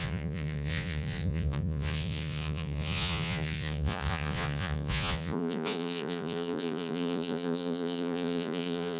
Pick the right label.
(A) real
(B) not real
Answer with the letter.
B